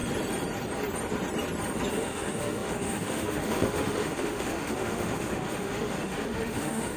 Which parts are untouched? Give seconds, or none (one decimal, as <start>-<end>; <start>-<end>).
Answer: 0.0-1.9